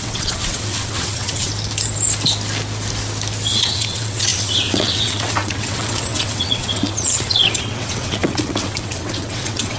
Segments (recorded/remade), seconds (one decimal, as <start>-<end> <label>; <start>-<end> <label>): 0.0-1.5 remade; 1.5-3.5 recorded; 3.5-9.8 remade